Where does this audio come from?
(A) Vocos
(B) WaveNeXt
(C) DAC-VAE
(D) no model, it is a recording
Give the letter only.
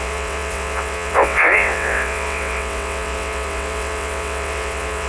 B